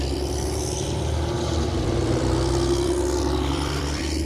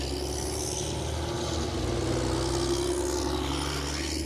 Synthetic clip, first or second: first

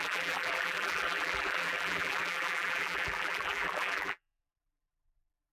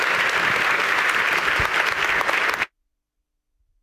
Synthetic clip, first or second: first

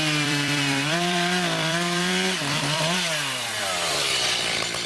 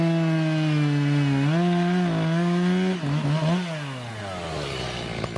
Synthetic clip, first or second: first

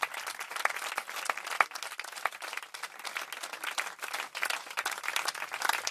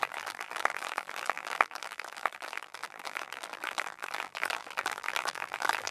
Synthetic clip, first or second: second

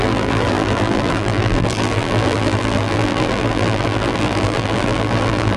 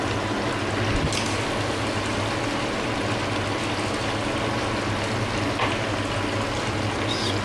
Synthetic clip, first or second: first